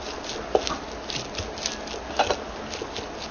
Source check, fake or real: real